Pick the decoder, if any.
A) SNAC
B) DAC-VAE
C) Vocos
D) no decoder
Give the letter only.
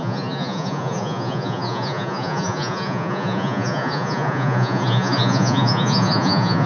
C